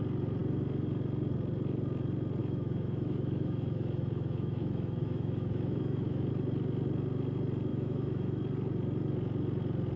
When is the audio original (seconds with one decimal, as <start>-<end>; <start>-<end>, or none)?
0.0-2.4; 6.3-7.7; 8.4-10.0